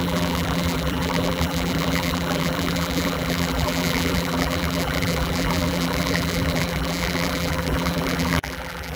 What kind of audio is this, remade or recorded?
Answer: remade